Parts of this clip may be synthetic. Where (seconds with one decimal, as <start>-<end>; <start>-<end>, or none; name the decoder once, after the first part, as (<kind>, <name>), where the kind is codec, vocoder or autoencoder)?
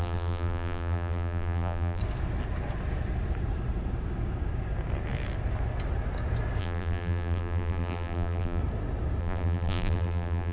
0.0-2.0 (vocoder, BigVGAN v2); 6.6-8.6; 9.2-10.5